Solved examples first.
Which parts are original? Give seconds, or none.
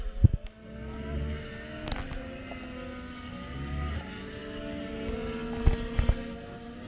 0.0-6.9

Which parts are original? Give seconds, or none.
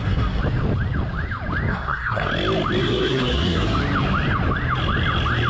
0.4-1.7; 2.3-2.8; 3.8-5.5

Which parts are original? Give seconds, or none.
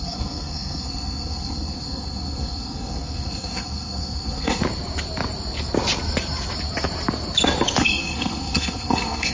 4.6-7.8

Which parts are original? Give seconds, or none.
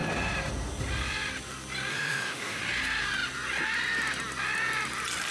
0.0-1.9; 2.6-5.3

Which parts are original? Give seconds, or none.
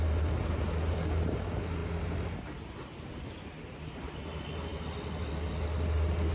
0.0-6.3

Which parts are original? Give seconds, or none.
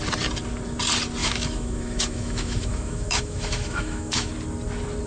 0.0-1.2; 4.3-5.1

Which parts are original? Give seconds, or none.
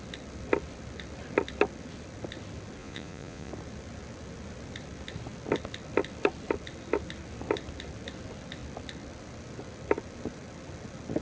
0.0-2.8; 3.5-11.2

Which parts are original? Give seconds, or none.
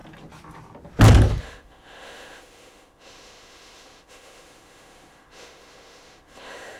0.0-1.4